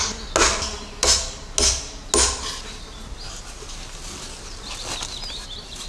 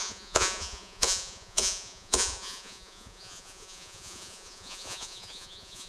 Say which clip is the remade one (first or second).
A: second